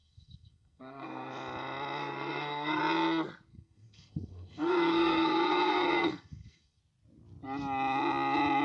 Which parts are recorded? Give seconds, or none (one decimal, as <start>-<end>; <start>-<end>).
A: 1.3-2.0; 2.8-3.5; 6.8-8.6